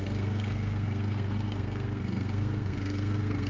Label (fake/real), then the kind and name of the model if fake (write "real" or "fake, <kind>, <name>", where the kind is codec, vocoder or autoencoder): fake, codec, SNAC